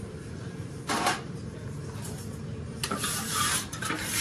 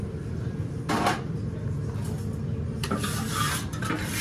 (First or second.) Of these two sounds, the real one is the second